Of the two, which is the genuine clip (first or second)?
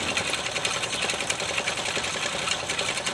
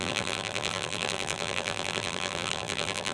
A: first